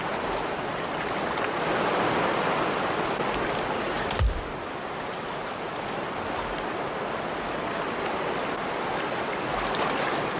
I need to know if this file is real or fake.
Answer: real